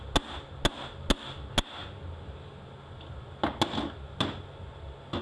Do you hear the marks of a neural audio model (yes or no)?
no